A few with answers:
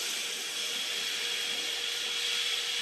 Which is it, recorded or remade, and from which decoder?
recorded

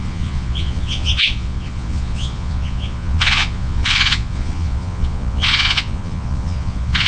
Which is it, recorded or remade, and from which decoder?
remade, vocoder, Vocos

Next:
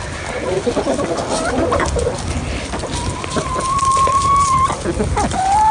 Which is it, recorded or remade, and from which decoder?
recorded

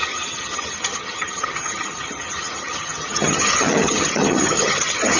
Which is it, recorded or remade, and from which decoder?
remade, vocoder, HiFi-GAN